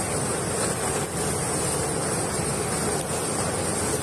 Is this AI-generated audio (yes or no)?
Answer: no